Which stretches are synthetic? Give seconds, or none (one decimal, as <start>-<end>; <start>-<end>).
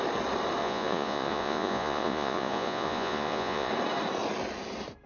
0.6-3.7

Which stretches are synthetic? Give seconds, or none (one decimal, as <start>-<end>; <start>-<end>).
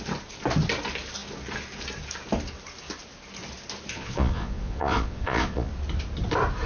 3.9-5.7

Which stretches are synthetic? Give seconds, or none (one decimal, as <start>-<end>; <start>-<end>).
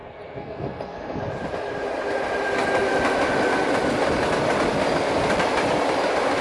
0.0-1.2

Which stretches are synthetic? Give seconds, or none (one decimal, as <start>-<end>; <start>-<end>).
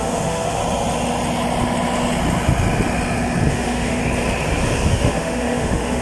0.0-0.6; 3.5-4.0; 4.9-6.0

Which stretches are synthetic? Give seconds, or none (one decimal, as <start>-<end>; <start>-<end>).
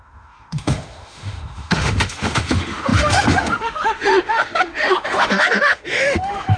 0.0-6.6